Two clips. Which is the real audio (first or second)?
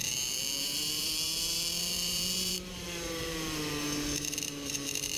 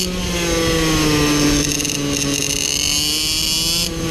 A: second